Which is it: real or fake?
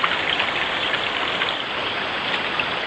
real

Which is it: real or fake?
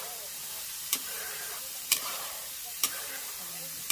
fake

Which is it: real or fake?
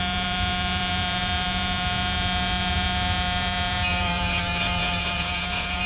fake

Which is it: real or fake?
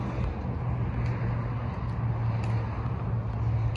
real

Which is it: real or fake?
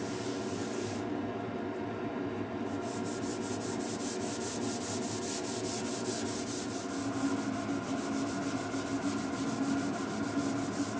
real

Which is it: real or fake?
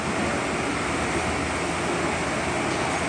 real